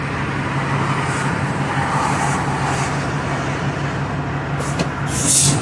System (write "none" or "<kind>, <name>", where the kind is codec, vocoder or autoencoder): none